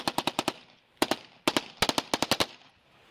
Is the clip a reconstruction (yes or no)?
no